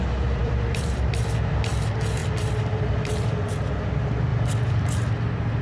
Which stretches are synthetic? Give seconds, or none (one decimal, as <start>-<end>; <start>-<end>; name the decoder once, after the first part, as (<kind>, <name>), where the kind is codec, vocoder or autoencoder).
0.4-1.7 (vocoder, BigVGAN v2); 2.2-3.5; 4.3-5.1